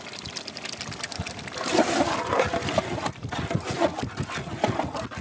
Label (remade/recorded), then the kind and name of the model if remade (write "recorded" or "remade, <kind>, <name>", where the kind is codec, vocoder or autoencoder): recorded